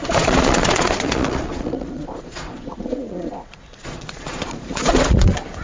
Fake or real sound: fake